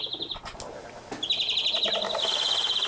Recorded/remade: recorded